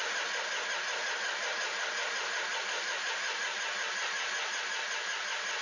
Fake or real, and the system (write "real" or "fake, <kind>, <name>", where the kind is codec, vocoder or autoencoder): real